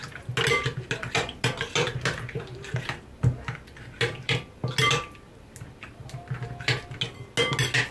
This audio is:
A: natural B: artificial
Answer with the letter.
A